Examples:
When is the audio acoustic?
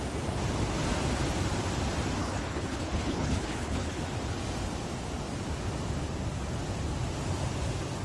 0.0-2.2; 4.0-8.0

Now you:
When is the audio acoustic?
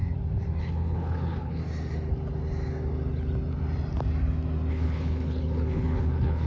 0.0-0.6; 1.6-4.7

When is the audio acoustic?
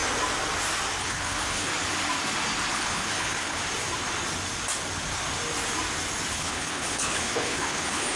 0.0-1.0; 1.7-2.7; 3.6-6.3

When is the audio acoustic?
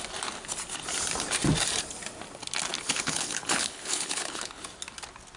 0.0-2.7; 4.6-5.4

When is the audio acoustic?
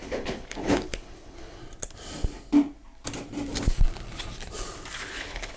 1.6-5.0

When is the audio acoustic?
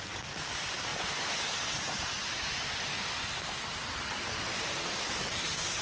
0.0-5.8